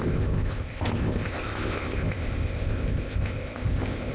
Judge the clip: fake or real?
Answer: fake